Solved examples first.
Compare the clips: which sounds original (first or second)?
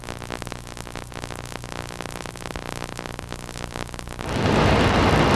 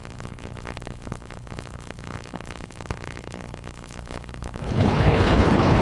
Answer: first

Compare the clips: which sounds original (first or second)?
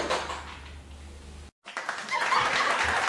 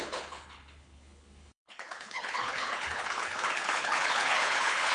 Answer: first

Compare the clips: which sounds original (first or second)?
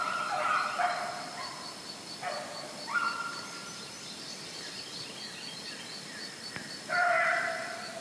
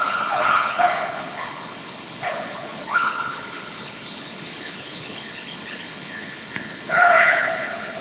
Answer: first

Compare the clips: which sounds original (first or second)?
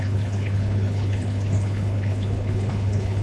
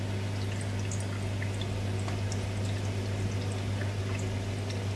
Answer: second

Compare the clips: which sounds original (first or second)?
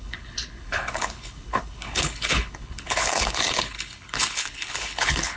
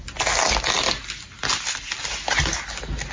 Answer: second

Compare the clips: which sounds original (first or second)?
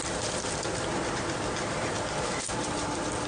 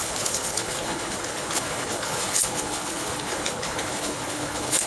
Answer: first